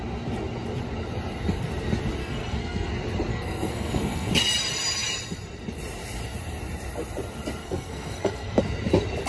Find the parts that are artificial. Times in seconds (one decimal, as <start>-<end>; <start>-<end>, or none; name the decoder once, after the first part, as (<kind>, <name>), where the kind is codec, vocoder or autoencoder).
2.2-2.9 (codec, SNAC); 3.3-4.3; 7.6-8.6